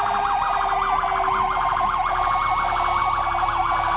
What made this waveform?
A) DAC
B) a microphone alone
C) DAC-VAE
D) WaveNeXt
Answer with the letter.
B